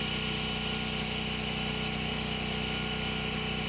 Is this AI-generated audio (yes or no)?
no